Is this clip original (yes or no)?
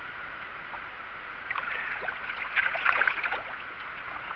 no